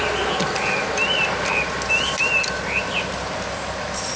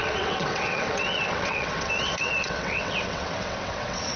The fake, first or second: second